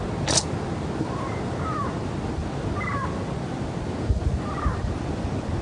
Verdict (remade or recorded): recorded